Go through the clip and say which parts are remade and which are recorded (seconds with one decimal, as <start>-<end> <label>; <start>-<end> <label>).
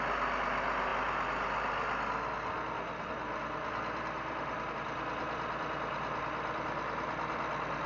0.0-7.9 recorded